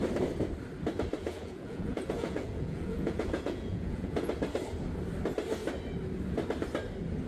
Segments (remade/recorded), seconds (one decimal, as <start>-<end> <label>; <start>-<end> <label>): 0.0-1.2 recorded; 1.2-4.3 remade; 4.3-7.3 recorded